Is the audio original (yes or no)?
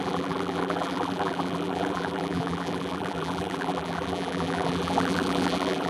no